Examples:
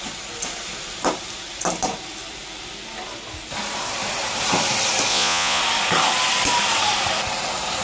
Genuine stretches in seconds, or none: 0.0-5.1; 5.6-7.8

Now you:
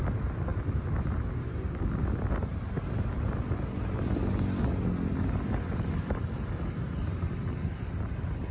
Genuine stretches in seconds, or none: 0.0-8.5